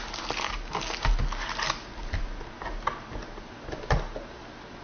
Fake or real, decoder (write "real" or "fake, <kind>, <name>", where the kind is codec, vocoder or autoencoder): real